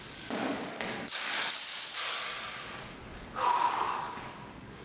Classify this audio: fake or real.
fake